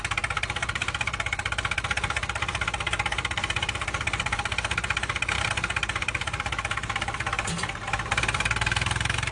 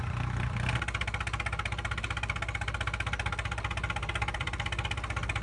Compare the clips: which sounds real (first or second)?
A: second